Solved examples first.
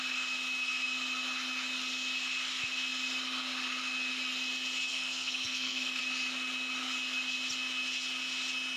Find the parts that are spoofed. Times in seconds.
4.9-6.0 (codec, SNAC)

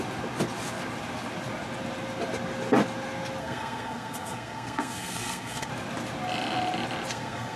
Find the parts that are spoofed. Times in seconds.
3.4-5.7 (codec, SNAC); 7.1-7.6

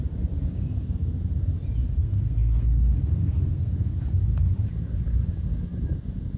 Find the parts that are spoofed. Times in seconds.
2.0-3.9 (codec, SNAC)

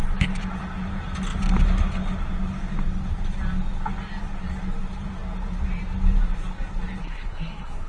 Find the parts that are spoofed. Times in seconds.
7.0-7.9 (codec, SNAC)